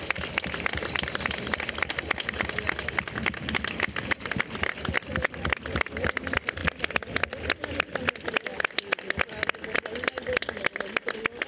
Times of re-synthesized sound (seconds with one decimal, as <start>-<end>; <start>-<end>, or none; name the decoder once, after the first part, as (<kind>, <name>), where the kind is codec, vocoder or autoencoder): none